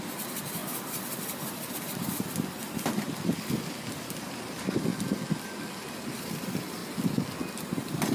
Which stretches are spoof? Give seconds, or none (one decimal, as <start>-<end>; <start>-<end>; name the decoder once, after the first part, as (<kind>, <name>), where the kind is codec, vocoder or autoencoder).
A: 0.0-4.9 (vocoder, BigVGAN v2); 6.1-6.8; 7.5-8.1